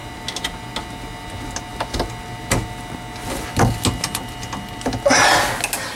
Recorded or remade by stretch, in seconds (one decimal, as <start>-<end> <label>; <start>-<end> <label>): 0.0-6.0 recorded